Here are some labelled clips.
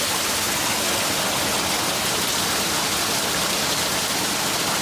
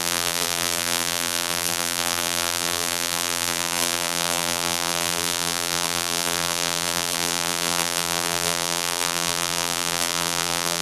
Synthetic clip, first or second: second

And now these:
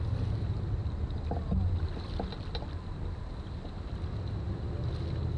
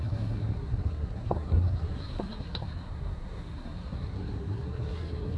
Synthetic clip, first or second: second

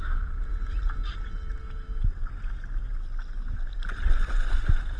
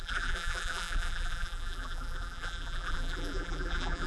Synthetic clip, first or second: second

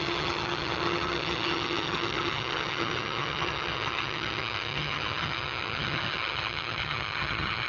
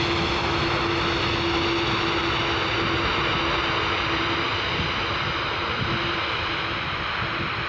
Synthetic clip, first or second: first